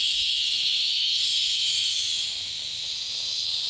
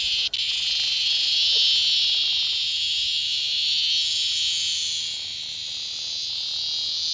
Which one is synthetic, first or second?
first